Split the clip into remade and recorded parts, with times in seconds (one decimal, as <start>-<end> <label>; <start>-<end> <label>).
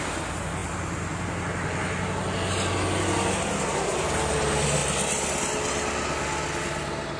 0.0-7.2 recorded